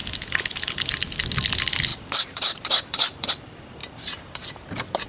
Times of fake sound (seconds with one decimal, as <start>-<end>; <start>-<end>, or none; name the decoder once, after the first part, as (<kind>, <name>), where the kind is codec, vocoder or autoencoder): 1.9-3.3 (vocoder, BigVGAN v2); 3.8-4.5